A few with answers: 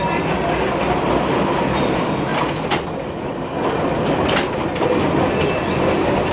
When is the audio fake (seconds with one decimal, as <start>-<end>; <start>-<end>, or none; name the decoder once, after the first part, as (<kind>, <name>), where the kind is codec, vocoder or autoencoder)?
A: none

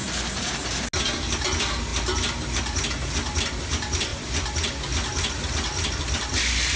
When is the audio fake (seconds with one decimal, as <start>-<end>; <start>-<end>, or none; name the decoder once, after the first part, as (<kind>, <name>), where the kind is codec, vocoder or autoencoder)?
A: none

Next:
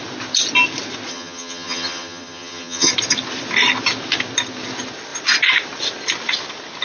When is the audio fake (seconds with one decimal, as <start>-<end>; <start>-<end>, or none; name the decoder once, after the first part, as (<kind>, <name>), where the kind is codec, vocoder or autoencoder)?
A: 1.1-2.9 (vocoder, HiFi-GAN)

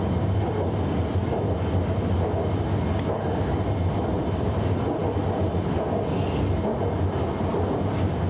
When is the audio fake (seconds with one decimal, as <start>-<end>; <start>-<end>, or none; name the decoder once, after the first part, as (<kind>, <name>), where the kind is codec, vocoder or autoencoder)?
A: none

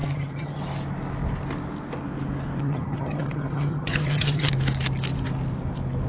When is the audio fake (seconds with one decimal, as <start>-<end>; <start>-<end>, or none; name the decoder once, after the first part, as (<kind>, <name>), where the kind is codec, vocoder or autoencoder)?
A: 0.0-0.6 (vocoder, HiFi-GAN); 2.6-4.5